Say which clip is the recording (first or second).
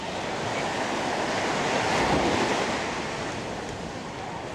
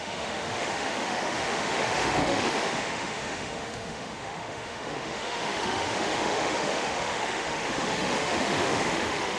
first